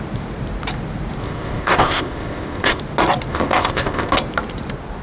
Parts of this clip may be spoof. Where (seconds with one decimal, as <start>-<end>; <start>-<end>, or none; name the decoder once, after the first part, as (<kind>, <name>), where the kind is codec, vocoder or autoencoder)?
1.2-2.8 (codec, ZipCodec); 3.3-4.1